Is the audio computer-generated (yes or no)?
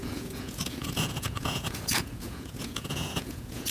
yes